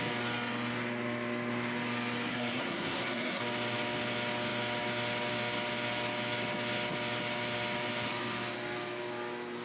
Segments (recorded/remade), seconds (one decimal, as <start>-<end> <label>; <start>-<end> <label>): 0.0-2.3 recorded; 2.3-3.4 remade; 3.4-9.6 recorded